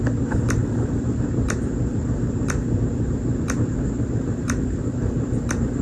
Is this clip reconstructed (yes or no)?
yes